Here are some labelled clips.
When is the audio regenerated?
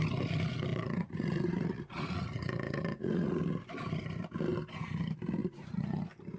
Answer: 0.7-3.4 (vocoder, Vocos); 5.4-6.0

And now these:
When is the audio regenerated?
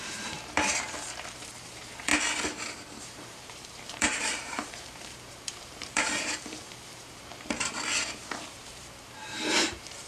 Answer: 0.0-2.1 (vocoder, BigVGAN v2); 3.0-10.1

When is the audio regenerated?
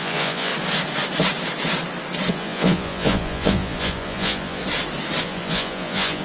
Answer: 0.0-0.5 (vocoder, Vocos); 2.3-4.6; 5.2-6.2